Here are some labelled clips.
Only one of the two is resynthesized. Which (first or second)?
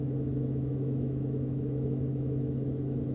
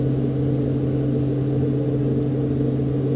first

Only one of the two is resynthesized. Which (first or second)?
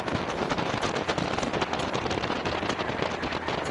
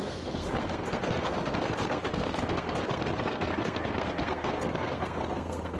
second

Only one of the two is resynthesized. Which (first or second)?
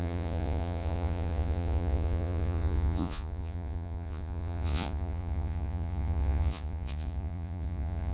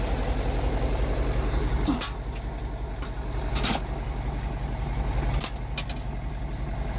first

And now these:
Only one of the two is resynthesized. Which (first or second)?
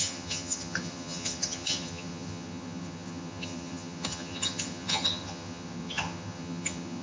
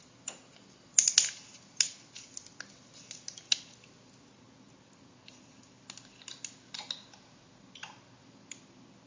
first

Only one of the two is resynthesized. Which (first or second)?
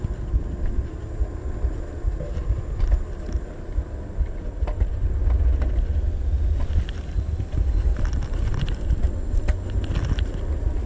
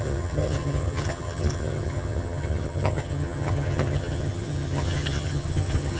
second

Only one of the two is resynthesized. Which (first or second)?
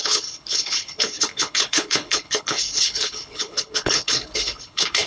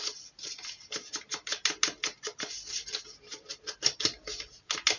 first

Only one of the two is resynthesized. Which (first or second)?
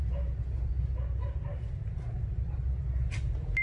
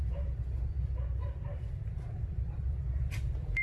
second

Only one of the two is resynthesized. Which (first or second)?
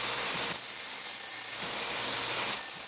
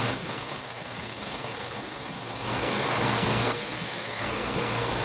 second